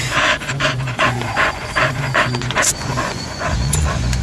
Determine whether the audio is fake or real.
fake